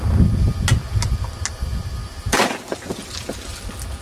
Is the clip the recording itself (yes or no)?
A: yes